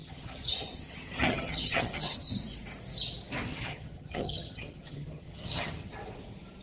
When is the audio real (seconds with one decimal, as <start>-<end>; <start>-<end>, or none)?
2.3-3.5; 5.9-6.6